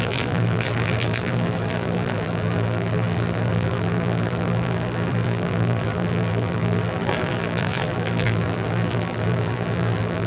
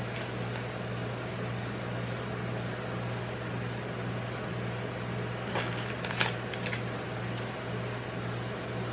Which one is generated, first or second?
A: first